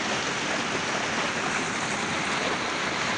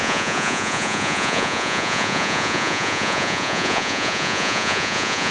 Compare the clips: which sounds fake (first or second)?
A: second